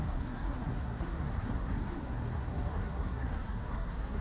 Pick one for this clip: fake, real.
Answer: fake